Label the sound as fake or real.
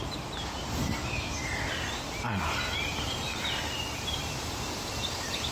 real